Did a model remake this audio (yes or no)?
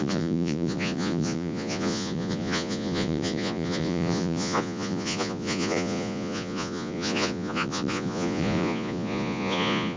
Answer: yes